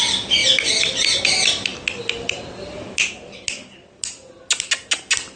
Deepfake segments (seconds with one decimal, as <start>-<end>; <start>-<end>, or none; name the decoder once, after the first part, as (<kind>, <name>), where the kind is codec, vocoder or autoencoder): none